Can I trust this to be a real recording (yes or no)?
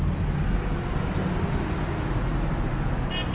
yes